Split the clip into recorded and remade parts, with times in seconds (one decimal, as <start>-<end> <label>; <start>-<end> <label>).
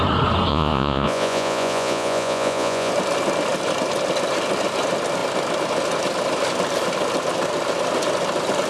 0.0-0.5 recorded; 0.5-2.9 remade; 2.9-8.7 recorded